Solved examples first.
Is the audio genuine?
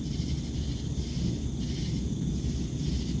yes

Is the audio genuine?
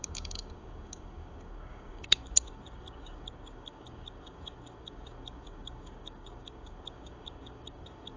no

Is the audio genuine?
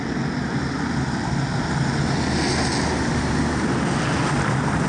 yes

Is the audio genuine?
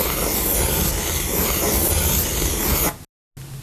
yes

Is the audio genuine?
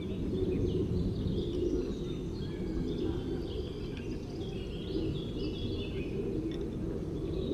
yes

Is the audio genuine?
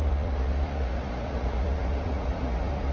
no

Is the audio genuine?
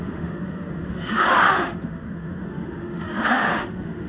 no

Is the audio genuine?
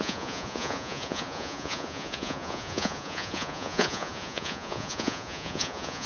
no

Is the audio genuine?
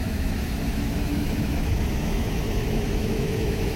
no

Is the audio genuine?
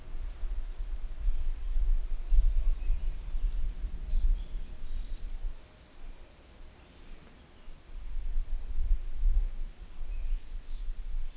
yes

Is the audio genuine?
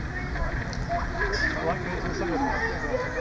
yes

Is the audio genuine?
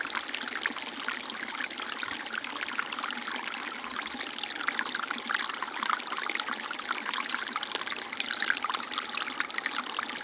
yes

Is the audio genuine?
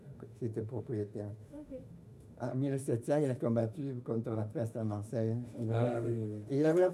no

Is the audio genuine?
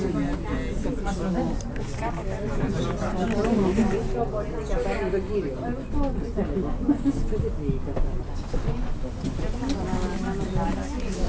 yes